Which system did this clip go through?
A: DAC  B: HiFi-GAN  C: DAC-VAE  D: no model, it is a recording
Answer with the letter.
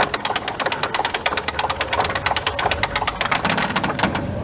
D